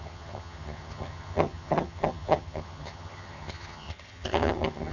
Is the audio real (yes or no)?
no